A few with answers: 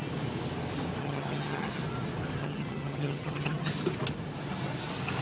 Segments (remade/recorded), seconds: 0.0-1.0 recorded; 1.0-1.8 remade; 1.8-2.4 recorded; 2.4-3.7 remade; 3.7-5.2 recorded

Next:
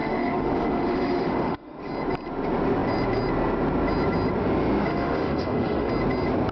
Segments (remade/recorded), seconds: 0.0-1.8 remade; 1.8-4.9 recorded; 4.9-5.9 remade; 5.9-6.5 recorded

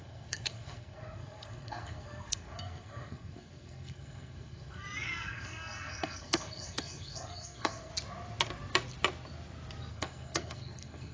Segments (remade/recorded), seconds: 0.0-7.9 remade; 7.9-9.9 recorded; 9.9-11.1 remade

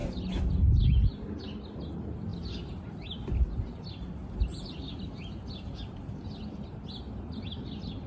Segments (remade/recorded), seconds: 0.0-8.1 recorded